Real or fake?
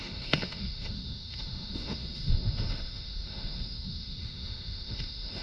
fake